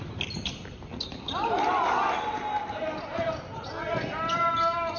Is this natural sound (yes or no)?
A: yes